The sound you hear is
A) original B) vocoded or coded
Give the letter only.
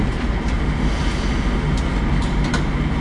A